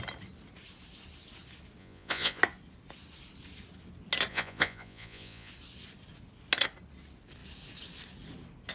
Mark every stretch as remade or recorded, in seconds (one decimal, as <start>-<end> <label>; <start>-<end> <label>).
0.0-1.8 recorded; 1.8-2.4 remade; 2.4-4.3 recorded; 4.3-5.5 remade; 5.5-8.7 recorded